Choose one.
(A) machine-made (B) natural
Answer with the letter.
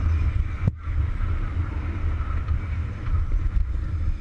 B